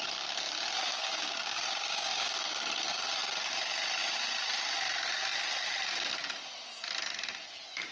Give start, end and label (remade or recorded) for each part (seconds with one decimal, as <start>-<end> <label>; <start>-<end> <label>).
0.0-0.9 recorded; 0.9-2.1 remade; 2.1-7.9 recorded